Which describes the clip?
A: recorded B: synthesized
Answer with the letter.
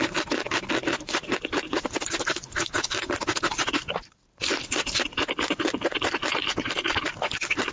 A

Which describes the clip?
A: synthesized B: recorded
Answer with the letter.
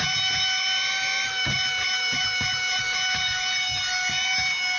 B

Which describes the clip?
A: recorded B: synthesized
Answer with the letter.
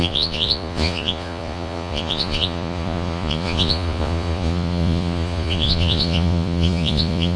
B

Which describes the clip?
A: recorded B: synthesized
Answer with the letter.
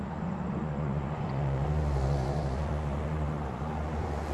B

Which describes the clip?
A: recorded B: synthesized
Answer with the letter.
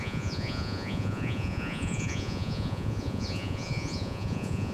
B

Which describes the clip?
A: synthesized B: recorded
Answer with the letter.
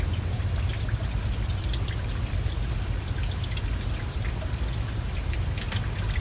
B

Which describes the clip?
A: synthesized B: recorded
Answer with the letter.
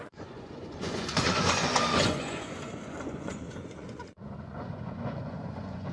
A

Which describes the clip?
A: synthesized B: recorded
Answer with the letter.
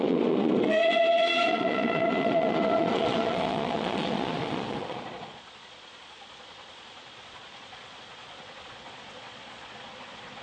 A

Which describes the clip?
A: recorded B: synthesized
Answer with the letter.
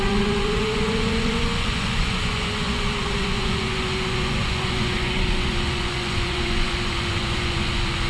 B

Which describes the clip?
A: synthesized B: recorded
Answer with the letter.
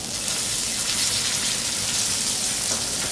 B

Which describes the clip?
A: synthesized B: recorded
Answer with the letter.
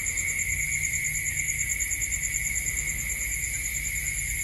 B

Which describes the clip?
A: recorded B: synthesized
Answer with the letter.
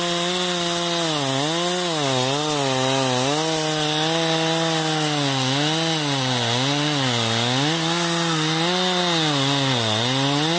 A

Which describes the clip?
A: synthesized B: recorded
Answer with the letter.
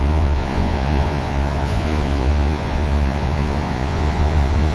A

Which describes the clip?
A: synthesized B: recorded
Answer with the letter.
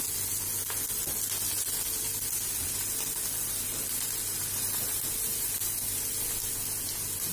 B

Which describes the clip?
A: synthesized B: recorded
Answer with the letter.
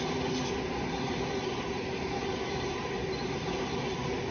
B